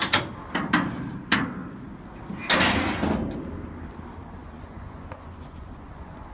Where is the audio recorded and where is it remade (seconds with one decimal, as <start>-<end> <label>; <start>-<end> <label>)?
0.0-4.4 recorded; 4.4-6.3 remade